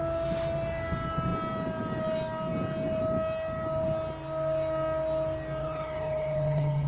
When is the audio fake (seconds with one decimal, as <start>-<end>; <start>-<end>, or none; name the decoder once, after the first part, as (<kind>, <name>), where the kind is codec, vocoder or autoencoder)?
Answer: 5.6-6.9 (codec, HILCodec)